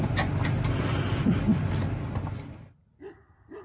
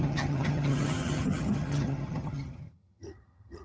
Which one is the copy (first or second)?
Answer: second